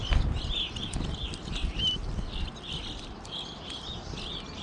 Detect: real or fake real